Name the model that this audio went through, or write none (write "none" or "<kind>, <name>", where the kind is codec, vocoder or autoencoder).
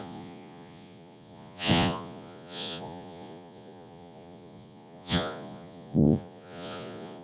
vocoder, Vocos